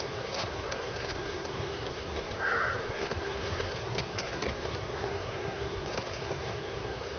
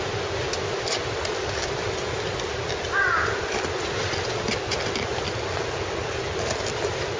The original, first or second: second